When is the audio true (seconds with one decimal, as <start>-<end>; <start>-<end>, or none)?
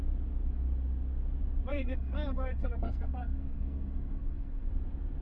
0.0-1.7; 4.7-5.2